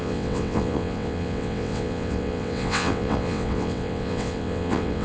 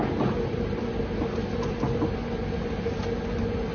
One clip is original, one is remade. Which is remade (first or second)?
first